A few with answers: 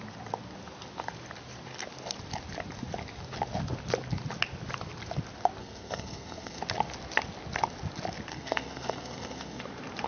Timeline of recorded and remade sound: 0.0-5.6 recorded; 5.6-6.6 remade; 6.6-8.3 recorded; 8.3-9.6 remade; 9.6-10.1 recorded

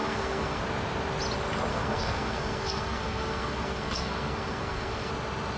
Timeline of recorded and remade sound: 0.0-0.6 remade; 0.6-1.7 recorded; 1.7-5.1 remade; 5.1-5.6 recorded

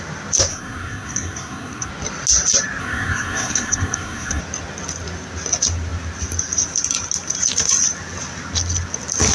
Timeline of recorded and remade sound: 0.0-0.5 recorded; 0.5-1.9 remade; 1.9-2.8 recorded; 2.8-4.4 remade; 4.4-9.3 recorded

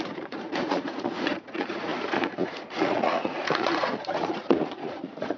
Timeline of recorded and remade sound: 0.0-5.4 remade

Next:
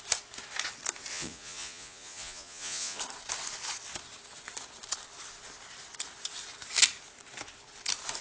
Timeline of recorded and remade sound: 0.0-1.1 recorded; 1.1-3.0 remade; 3.0-8.2 recorded

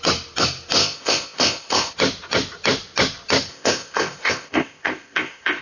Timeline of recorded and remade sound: 0.0-0.8 recorded; 0.8-1.9 remade; 1.9-3.5 recorded; 3.5-5.6 remade

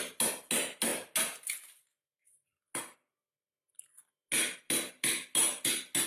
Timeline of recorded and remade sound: 0.0-6.1 recorded